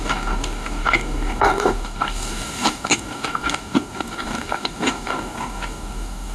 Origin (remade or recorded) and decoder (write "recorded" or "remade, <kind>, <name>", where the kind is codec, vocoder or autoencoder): remade, codec, DAC